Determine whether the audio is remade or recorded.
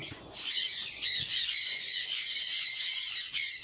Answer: remade